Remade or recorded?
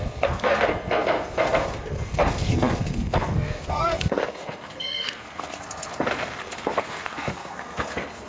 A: remade